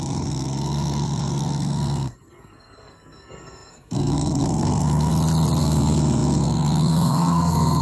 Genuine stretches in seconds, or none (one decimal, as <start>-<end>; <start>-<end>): 5.1-5.6